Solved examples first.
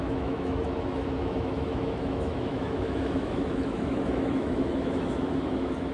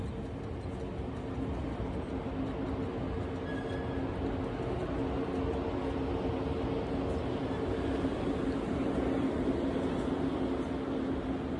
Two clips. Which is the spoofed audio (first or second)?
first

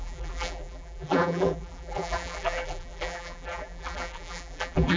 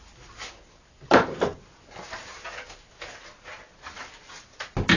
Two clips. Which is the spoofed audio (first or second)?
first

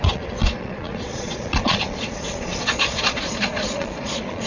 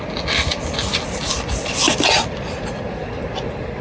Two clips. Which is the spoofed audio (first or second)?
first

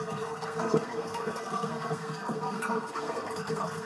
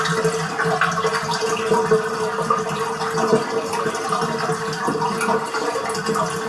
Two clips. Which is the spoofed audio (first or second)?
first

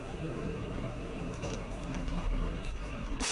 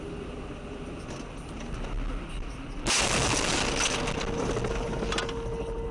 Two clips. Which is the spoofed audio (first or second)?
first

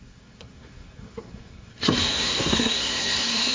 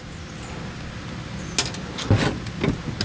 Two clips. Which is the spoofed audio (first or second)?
first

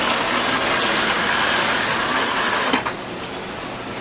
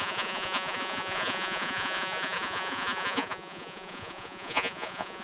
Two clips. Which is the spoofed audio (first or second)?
second